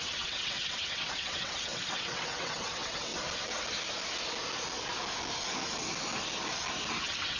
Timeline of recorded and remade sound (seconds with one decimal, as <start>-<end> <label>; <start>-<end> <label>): 0.0-3.1 remade; 3.1-6.9 recorded; 6.9-7.4 remade